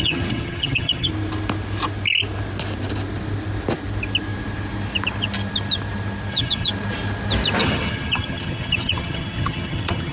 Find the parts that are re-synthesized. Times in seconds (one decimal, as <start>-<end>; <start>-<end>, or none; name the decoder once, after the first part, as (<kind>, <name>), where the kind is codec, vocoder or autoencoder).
0.0-1.1 (vocoder, HiFi-GAN); 6.3-6.7; 7.6-10.1